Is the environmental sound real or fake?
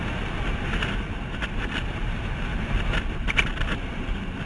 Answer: real